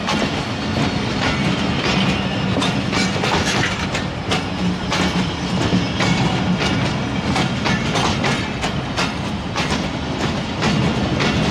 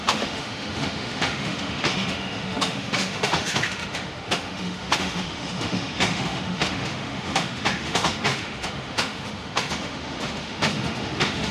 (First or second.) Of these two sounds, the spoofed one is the second